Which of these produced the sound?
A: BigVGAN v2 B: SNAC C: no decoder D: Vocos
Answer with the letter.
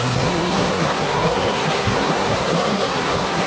B